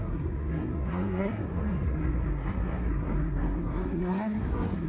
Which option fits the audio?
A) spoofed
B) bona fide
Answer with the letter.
A